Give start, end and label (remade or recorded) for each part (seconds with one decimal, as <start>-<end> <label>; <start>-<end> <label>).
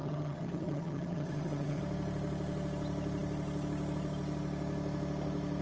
0.0-1.8 remade; 1.8-5.6 recorded